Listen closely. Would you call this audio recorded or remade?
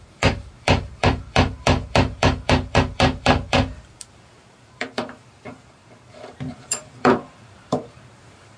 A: remade